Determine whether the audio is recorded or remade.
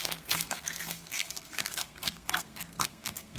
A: remade